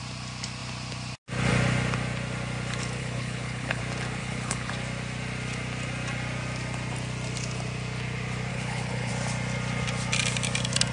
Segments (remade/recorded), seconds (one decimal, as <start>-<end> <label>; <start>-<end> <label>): 0.0-3.0 recorded; 3.0-3.8 remade; 3.8-4.2 recorded; 4.2-4.7 remade; 4.7-8.5 recorded; 8.5-9.1 remade; 9.1-10.9 recorded